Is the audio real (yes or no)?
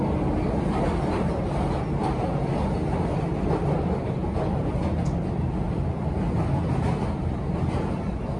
yes